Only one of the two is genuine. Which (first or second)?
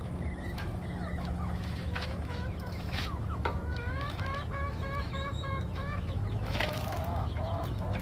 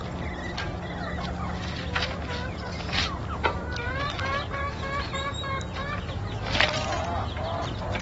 second